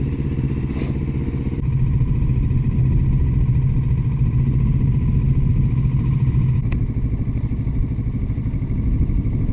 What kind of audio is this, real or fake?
real